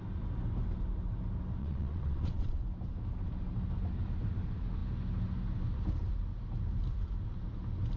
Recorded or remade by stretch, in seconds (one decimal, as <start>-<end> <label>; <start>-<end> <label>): 0.0-1.6 recorded; 1.6-2.6 remade; 2.6-8.0 recorded